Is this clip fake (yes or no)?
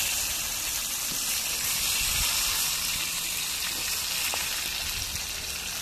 no